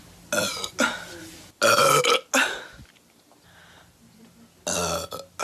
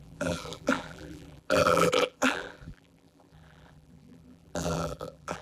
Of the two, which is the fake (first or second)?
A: second